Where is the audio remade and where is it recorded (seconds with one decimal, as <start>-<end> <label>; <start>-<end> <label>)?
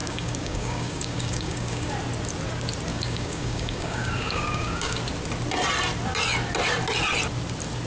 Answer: 0.0-1.9 remade; 1.9-2.9 recorded; 2.9-5.0 remade; 5.0-7.9 recorded